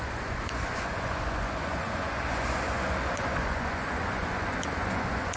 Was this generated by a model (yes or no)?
yes